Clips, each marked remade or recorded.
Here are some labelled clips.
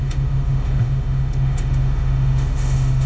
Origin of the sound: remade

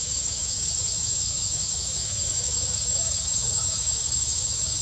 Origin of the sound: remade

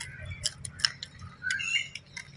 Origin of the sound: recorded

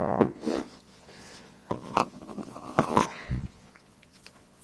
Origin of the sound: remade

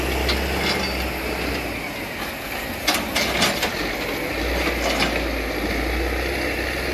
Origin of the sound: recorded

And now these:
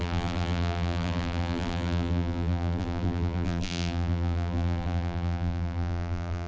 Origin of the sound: remade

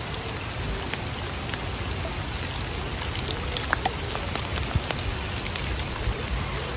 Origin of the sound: recorded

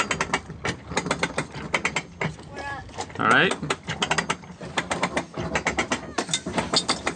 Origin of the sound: recorded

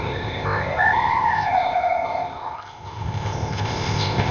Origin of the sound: remade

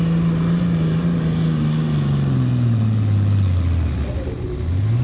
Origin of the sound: recorded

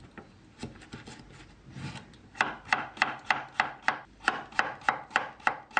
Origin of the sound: recorded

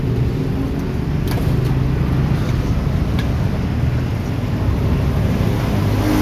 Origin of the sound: recorded